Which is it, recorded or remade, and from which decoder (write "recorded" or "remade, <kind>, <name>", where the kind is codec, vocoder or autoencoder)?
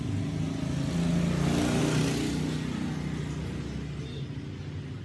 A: recorded